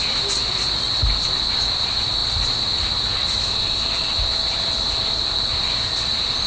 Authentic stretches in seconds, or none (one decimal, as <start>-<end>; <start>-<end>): 0.0-6.5